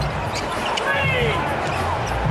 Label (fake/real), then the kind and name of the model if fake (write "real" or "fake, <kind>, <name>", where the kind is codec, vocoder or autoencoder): real